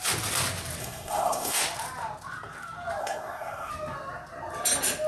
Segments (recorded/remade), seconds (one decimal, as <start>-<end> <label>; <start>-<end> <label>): 0.0-0.8 recorded; 0.8-1.6 remade; 1.6-3.0 recorded; 3.0-3.7 remade; 3.7-5.1 recorded